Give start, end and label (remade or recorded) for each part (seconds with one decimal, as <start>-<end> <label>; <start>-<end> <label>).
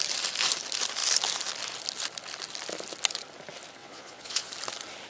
0.0-3.8 recorded; 3.8-4.5 remade; 4.5-5.1 recorded